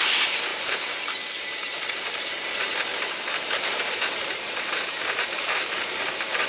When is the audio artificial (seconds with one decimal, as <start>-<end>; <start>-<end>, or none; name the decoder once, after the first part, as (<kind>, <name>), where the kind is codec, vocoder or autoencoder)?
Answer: 0.5-2.5 (vocoder, BigVGAN v2); 2.9-6.5